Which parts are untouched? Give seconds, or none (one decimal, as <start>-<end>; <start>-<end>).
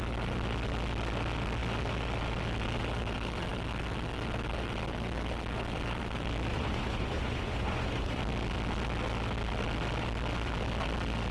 0.0-6.5; 8.2-11.3